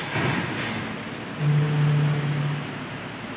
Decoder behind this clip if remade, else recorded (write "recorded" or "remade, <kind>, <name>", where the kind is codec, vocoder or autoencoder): recorded